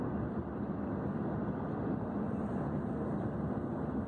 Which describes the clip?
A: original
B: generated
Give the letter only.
A